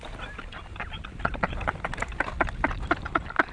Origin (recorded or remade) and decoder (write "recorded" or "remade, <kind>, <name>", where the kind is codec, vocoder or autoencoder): recorded